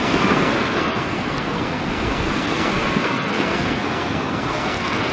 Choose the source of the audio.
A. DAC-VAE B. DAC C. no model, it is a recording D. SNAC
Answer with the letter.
D